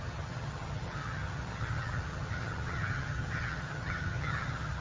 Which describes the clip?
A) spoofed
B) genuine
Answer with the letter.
A